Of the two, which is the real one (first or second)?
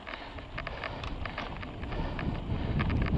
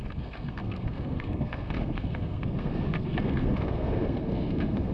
first